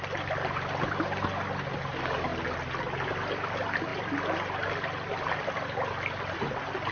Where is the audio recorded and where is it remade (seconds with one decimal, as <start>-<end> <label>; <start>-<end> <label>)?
0.0-6.9 recorded

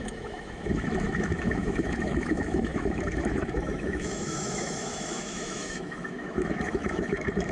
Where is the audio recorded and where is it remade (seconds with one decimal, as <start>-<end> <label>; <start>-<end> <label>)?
0.0-7.5 remade

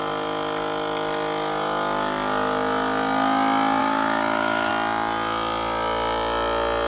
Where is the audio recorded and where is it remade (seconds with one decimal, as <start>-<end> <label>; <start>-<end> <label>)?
0.0-3.8 recorded; 3.8-4.7 remade; 4.7-6.9 recorded

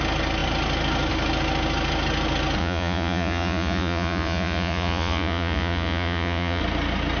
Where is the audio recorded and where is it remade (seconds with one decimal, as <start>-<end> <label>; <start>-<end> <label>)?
0.0-2.6 recorded; 2.6-6.6 remade; 6.6-7.2 recorded